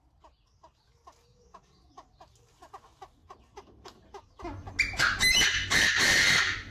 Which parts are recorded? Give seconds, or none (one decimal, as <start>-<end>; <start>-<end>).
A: 0.0-6.7